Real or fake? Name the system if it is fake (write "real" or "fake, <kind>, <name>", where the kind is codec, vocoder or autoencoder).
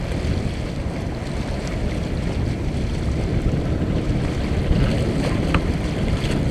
real